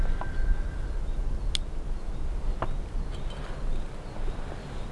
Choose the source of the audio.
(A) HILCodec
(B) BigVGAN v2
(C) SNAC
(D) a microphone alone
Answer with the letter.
D